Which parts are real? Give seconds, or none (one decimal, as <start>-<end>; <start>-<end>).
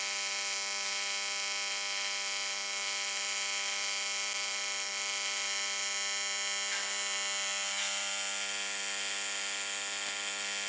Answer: 0.0-10.7